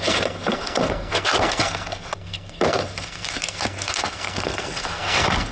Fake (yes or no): yes